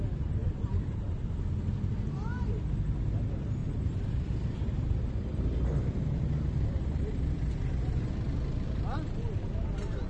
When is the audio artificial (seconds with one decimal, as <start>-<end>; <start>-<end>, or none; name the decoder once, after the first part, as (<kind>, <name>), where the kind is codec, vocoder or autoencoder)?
0.4-1.3 (vocoder, BigVGAN v2); 3.6-8.1